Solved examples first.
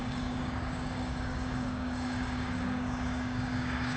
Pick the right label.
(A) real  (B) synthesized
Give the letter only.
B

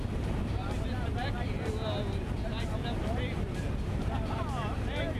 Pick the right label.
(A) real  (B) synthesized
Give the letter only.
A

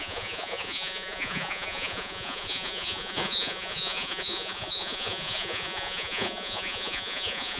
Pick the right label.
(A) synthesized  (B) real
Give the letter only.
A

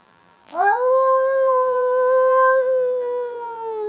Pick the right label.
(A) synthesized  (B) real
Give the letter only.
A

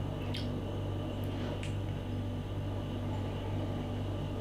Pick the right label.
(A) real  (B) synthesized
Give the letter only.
A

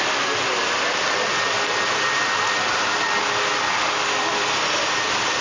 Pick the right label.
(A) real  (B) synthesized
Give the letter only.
A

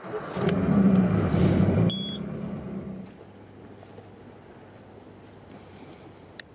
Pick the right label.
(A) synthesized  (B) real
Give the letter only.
B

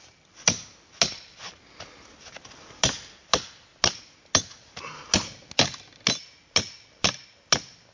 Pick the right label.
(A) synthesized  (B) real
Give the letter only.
B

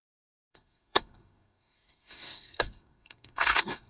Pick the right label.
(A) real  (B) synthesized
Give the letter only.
B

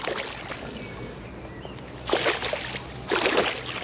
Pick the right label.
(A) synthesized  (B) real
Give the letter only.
B